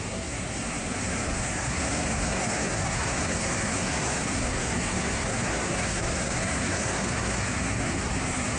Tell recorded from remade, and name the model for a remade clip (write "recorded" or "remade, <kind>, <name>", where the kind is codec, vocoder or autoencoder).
remade, codec, SNAC